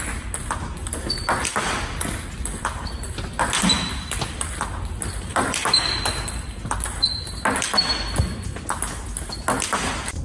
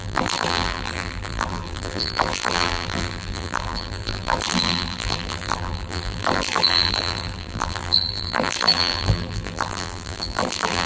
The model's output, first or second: second